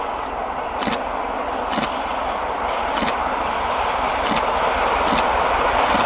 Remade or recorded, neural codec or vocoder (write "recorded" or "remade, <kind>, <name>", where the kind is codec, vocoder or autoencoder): recorded